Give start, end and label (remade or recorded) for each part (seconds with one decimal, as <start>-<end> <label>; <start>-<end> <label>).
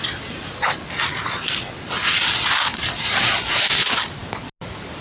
0.0-5.0 recorded